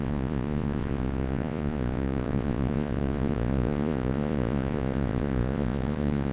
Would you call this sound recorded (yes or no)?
no